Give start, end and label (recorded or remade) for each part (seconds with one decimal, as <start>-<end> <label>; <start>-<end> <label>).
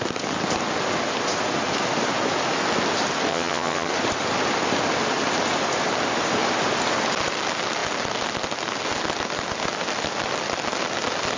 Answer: 0.0-3.3 recorded; 3.3-3.9 remade; 3.9-11.4 recorded